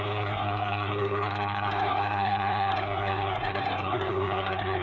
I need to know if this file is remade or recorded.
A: remade